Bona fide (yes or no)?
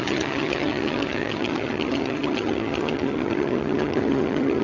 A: no